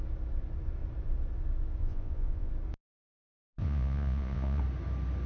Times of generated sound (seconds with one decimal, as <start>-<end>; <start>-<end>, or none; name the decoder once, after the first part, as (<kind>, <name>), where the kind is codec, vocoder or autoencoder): 1.8-2.5 (vocoder, Vocos); 3.6-4.6